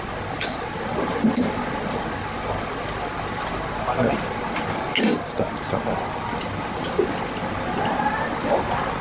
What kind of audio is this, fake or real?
real